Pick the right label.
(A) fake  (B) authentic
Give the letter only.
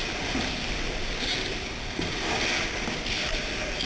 A